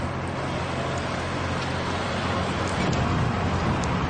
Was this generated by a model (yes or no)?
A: no